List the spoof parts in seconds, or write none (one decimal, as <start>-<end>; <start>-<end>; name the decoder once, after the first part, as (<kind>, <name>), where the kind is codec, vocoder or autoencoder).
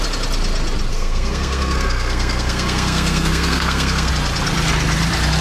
0.9-4.1 (codec, SNAC)